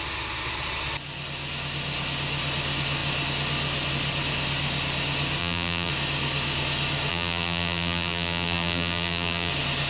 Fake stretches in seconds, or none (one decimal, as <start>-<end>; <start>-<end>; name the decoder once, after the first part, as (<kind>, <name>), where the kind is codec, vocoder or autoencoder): 5.4-5.9 (vocoder, BigVGAN v2); 7.1-9.5